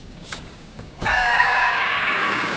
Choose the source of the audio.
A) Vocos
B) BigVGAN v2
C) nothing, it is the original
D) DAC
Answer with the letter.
D